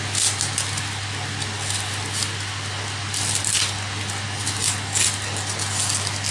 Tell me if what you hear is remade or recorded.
recorded